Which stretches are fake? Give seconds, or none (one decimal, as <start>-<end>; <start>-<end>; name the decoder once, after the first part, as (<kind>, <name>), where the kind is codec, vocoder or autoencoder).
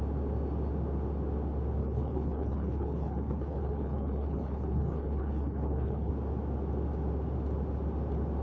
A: 1.8-6.1 (codec, HILCodec)